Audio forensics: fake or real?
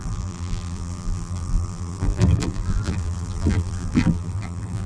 fake